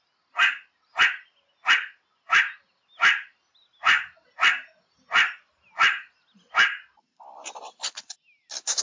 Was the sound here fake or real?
real